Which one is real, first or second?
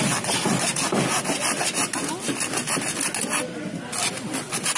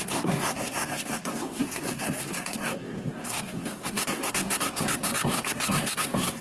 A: first